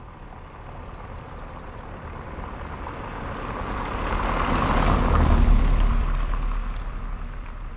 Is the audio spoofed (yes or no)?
yes